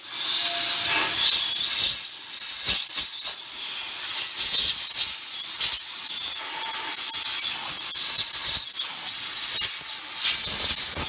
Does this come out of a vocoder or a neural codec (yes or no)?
no